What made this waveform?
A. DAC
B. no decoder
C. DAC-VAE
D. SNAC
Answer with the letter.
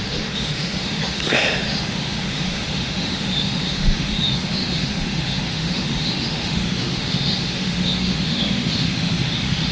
C